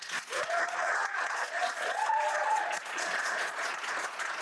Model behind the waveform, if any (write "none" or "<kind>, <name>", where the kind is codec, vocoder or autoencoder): vocoder, Vocos